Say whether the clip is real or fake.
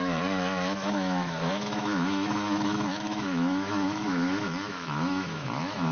fake